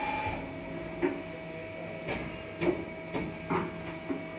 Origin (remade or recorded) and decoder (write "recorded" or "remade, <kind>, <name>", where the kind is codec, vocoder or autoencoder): recorded